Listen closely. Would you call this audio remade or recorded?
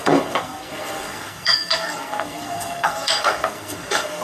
remade